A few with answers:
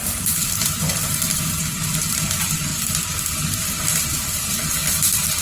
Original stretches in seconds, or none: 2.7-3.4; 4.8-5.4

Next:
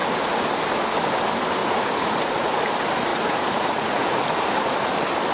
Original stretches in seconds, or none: 0.0-1.6; 2.6-3.1; 4.2-5.3

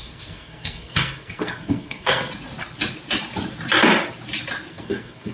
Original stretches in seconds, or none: 2.3-4.7

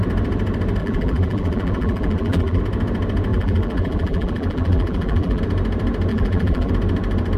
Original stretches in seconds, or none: 0.0-0.8; 2.6-3.3; 5.4-6.1; 6.7-7.4

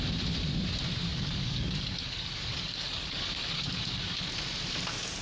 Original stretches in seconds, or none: 0.0-1.1; 4.2-5.2